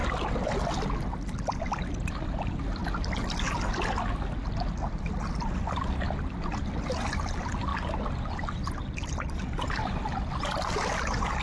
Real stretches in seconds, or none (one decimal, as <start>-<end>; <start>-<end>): 0.0-11.4